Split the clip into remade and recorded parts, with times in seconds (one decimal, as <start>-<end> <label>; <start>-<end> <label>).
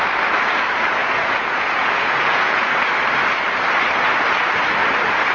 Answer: 0.0-1.0 recorded; 1.0-2.7 remade; 2.7-5.3 recorded